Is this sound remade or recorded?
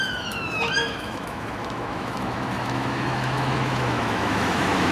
remade